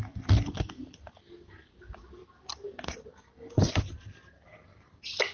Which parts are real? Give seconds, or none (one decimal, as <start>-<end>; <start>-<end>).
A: 0.0-5.3